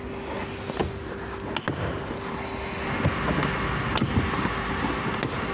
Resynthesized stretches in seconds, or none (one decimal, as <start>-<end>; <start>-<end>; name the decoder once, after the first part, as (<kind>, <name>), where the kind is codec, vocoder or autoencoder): none